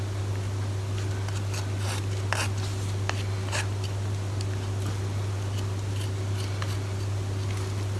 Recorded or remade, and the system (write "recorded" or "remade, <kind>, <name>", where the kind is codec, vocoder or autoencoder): recorded